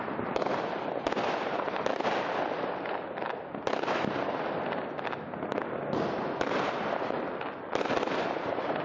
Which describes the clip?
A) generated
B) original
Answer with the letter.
B